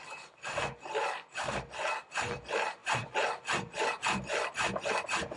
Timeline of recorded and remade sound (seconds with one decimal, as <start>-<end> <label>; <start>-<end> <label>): 0.0-5.4 remade

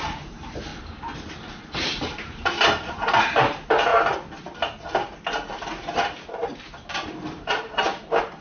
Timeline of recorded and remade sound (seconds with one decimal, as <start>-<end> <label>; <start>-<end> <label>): 0.0-0.7 remade; 0.7-1.6 recorded; 1.6-3.9 remade; 3.9-5.3 recorded; 5.3-8.4 remade